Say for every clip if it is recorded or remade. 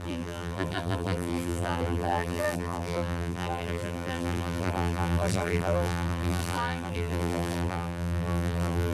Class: remade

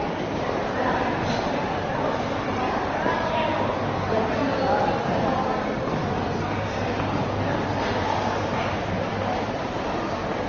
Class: remade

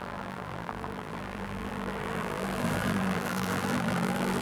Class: remade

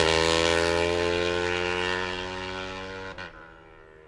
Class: recorded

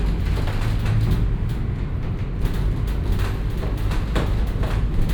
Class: recorded